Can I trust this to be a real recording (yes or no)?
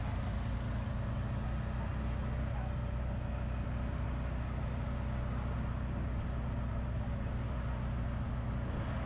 yes